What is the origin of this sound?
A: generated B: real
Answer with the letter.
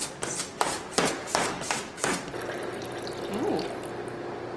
B